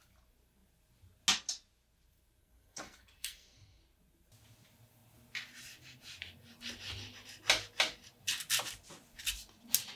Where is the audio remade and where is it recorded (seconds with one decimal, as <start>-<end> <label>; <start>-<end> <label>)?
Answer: 0.0-2.4 recorded; 2.4-3.8 remade; 3.8-10.0 recorded